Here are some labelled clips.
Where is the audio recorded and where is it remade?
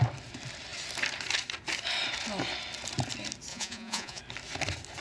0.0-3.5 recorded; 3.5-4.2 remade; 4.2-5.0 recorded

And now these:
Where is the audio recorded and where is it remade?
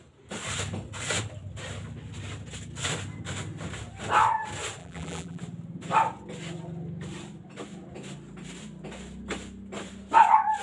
0.0-4.8 recorded; 4.8-5.4 remade; 5.4-10.6 recorded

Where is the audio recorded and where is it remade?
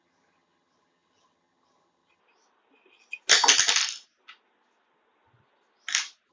0.0-2.2 remade; 2.2-6.3 recorded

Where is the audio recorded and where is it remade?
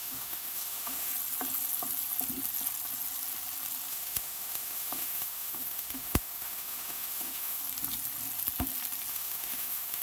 0.0-1.1 remade; 1.1-3.9 recorded; 3.9-7.6 remade; 7.6-9.1 recorded; 9.1-10.0 remade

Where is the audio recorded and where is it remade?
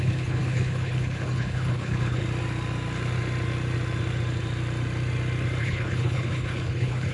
0.0-2.2 remade; 2.2-5.6 recorded; 5.6-7.1 remade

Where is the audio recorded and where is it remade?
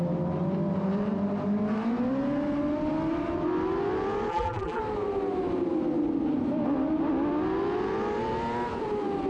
0.0-4.3 recorded; 4.3-4.8 remade; 4.8-9.3 recorded